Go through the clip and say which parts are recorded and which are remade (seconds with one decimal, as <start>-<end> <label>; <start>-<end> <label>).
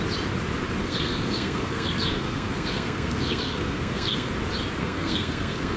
0.0-0.8 recorded; 0.8-4.3 remade; 4.3-4.8 recorded; 4.8-5.8 remade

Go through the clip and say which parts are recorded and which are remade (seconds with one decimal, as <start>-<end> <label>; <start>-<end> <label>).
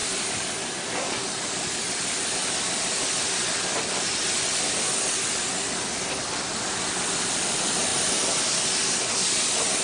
0.0-9.8 recorded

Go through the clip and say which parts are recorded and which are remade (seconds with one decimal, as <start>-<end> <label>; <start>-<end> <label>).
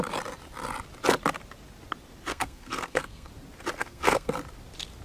0.0-2.3 recorded; 2.3-3.3 remade; 3.3-3.8 recorded; 3.8-4.3 remade; 4.3-5.0 recorded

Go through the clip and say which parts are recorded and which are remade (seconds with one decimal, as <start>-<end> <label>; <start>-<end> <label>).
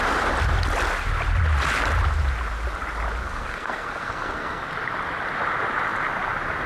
0.0-3.2 recorded; 3.2-4.7 remade; 4.7-6.7 recorded